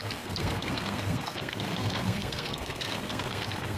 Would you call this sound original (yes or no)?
no